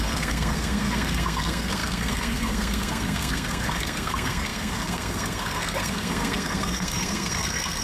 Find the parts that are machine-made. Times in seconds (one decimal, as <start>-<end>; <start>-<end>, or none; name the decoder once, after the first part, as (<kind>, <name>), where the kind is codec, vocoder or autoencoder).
0.0-7.8 (codec, SNAC)